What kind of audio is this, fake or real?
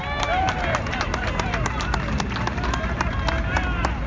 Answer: real